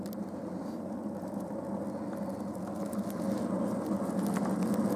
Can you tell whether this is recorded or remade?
recorded